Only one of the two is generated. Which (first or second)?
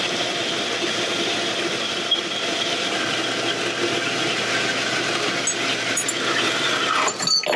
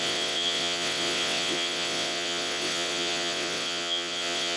second